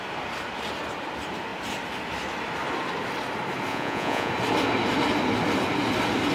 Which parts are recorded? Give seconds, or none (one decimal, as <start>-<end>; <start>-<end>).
0.0-3.7; 4.3-6.3